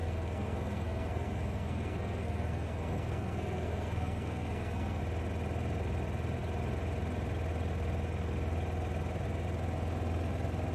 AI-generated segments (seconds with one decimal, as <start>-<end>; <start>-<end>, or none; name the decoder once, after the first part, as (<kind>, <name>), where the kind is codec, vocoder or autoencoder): 0.0-5.0 (codec, SNAC)